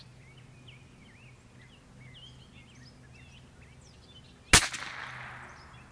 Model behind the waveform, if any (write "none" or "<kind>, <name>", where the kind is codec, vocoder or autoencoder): none